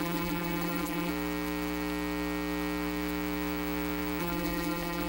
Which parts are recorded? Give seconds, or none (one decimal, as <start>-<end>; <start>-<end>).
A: 1.1-4.2